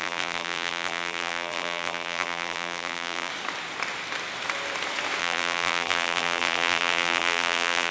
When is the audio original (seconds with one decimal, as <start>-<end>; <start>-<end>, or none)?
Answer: 3.3-5.2

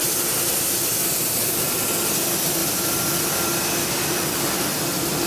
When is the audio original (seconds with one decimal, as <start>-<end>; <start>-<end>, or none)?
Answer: 1.0-2.0

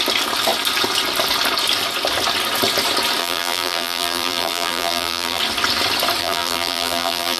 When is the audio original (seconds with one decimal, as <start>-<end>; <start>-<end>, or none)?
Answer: 0.0-3.2; 5.4-6.2

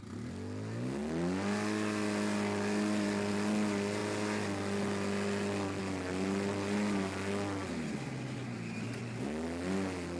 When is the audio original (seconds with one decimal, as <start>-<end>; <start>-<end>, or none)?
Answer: 0.0-10.2

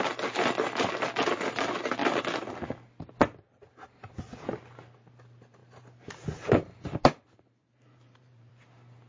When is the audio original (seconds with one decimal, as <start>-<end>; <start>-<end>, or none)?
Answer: 0.0-5.6; 8.5-9.1

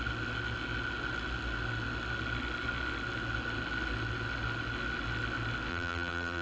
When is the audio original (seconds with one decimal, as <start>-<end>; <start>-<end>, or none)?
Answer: 0.0-5.7